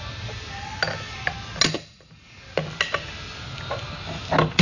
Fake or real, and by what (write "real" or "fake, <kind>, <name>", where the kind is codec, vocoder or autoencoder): real